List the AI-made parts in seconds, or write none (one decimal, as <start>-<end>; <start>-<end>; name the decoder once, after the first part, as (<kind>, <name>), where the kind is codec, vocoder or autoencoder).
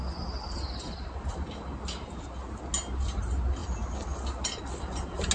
none